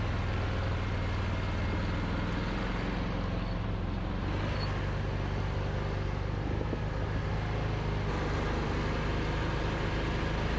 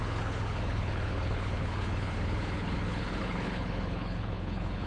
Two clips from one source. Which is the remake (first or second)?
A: second